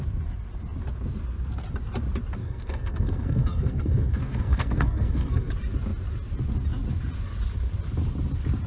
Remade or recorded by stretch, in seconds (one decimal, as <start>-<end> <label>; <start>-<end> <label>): 0.0-2.4 recorded; 2.4-5.5 remade; 5.5-8.7 recorded